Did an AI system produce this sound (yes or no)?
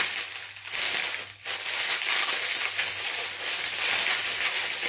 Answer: no